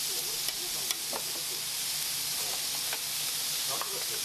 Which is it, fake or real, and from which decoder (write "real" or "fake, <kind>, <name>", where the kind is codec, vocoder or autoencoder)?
real